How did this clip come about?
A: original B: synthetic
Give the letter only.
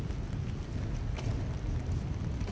A